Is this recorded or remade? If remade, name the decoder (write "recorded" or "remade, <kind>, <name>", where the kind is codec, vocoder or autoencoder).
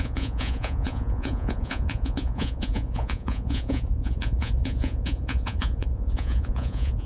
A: remade, vocoder, Vocos